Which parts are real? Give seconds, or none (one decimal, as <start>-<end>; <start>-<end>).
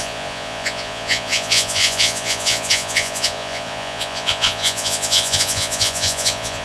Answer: none